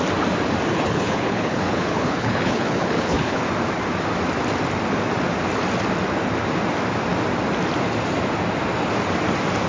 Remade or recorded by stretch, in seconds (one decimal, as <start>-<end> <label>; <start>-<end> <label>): 0.0-0.7 recorded; 0.7-3.4 remade; 3.4-9.7 recorded